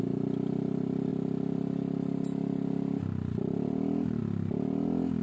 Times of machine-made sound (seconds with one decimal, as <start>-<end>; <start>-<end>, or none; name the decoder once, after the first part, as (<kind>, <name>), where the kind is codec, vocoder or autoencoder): none